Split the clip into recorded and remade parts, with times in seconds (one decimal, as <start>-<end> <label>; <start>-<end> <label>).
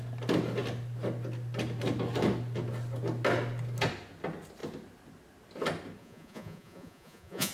0.0-6.0 recorded; 6.0-7.5 remade